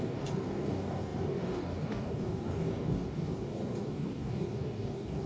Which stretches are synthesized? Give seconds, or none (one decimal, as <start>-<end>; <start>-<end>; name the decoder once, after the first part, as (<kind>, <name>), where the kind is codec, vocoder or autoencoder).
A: 0.0-5.3 (codec, DAC)